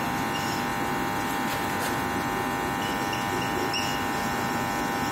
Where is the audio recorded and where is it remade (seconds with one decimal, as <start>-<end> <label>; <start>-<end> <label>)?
0.0-5.1 recorded